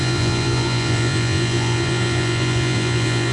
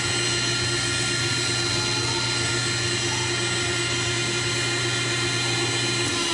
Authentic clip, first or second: second